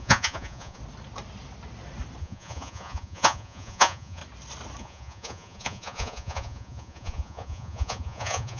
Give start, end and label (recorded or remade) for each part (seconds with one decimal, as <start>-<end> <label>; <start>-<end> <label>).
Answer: 0.0-0.8 remade; 0.8-2.2 recorded; 2.2-4.2 remade; 4.2-4.8 recorded; 4.8-8.6 remade